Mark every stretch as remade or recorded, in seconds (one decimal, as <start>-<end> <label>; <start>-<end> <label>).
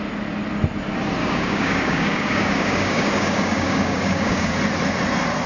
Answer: 0.0-1.2 recorded; 1.2-4.5 remade; 4.5-5.5 recorded